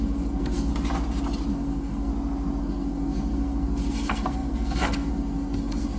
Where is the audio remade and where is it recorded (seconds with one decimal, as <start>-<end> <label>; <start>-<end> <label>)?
0.0-0.7 remade; 0.7-1.5 recorded; 1.5-2.1 remade; 2.1-2.6 recorded; 2.6-6.0 remade